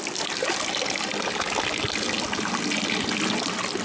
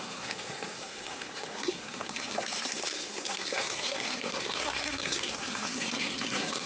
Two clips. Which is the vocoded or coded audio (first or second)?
second